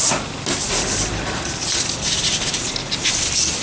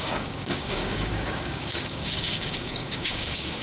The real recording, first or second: first